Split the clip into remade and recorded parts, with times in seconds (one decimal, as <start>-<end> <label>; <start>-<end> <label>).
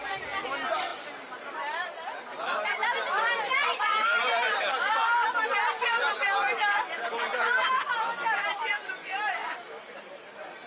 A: 0.0-9.4 recorded; 9.4-10.2 remade; 10.2-10.7 recorded